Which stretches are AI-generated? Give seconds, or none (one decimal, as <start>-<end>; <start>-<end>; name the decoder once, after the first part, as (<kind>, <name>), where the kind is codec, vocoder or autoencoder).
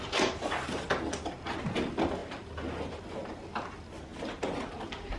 none